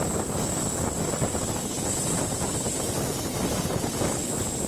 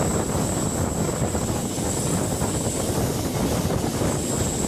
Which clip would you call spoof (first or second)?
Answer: first